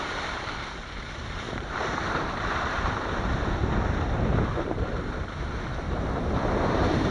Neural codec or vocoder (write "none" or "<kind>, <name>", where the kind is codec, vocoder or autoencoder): vocoder, BigVGAN v2